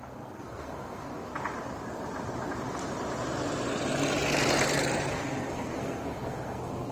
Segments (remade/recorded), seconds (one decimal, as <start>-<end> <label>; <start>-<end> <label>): 0.0-1.3 remade; 1.3-5.1 recorded; 5.1-6.9 remade